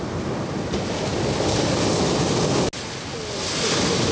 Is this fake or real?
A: real